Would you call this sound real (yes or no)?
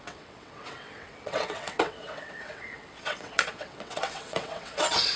no